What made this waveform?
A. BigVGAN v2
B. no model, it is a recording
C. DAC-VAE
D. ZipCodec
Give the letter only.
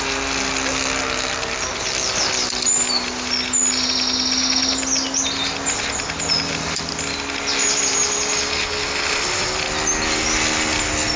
B